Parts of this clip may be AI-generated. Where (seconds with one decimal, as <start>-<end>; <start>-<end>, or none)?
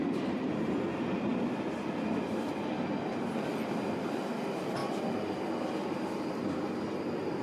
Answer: 0.0-0.5